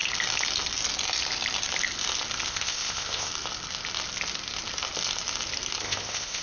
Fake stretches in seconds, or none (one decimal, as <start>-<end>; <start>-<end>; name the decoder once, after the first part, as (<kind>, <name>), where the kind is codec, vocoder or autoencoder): 2.5-3.3 (codec, ZipCodec); 5.8-6.4